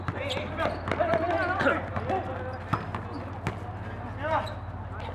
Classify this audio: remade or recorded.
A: recorded